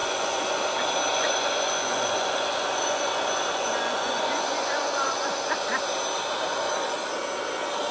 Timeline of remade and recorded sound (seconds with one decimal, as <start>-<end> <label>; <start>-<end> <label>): 0.0-0.6 remade; 0.6-1.1 recorded; 1.1-5.8 remade; 5.8-6.5 recorded; 6.5-7.1 remade; 7.1-7.9 recorded